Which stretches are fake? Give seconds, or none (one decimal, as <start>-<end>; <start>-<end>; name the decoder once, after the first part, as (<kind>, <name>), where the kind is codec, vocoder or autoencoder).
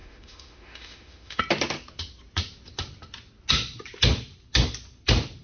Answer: 0.0-1.4 (autoencoder, DAC-VAE)